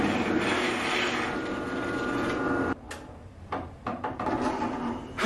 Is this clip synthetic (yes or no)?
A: no